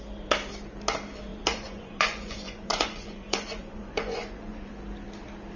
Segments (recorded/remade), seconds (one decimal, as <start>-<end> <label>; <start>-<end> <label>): 0.0-1.3 recorded; 1.3-4.7 remade; 4.7-5.6 recorded